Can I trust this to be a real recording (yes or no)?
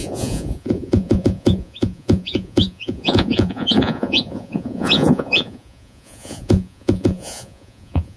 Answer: no